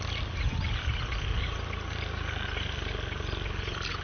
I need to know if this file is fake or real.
real